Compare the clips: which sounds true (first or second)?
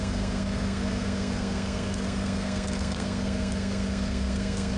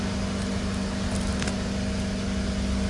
second